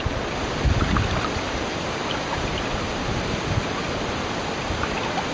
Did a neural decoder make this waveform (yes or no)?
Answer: no